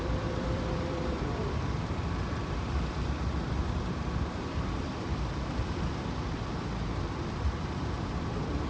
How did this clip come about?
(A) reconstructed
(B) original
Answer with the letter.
A